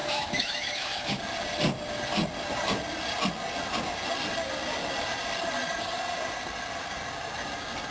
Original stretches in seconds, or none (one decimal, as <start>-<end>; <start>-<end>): 1.2-7.9